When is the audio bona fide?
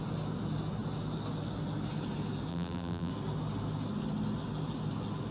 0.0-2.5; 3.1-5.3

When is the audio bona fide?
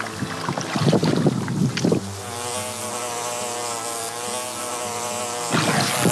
0.0-6.1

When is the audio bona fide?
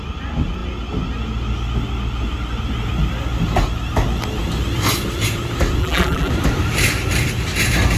0.0-5.8; 6.3-8.0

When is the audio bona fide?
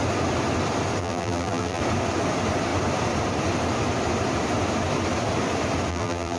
0.0-1.0; 1.8-5.9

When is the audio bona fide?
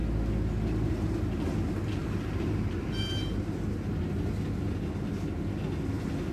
0.0-6.3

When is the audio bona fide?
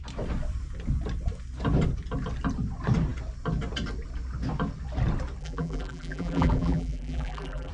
0.0-5.4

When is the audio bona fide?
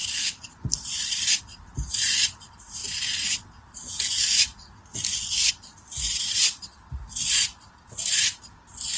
2.8-5.5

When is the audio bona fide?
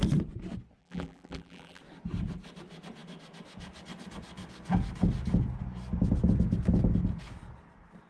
0.0-0.8; 1.8-8.1